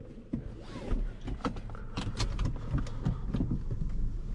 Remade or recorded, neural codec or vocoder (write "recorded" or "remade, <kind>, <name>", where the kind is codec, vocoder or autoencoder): recorded